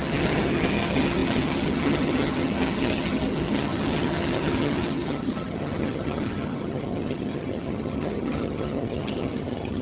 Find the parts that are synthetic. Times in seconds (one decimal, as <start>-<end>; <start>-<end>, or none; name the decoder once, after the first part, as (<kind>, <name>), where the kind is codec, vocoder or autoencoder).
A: 0.0-9.8 (vocoder, HiFi-GAN)